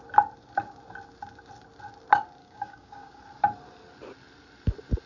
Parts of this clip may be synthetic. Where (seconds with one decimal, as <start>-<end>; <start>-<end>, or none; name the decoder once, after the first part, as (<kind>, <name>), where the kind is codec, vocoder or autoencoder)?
2.4-3.2 (codec, DAC)